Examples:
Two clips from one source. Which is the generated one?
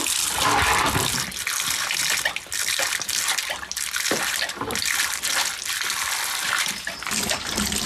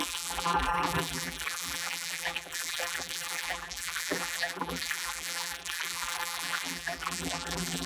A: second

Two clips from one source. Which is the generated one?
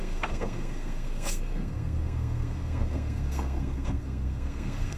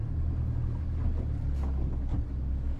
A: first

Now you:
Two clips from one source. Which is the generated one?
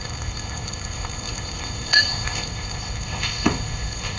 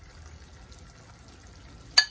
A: first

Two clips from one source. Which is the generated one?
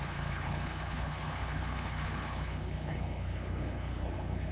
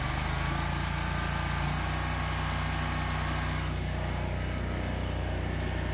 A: first